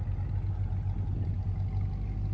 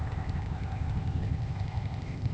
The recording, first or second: first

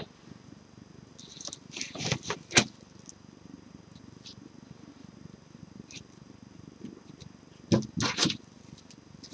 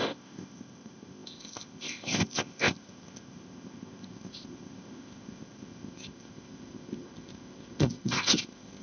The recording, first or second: first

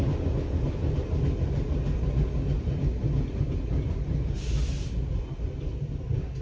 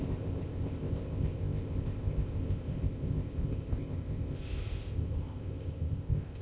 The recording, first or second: first